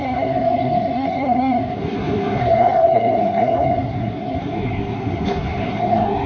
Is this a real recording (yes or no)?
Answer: no